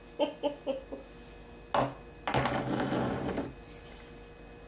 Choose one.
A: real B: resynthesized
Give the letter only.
A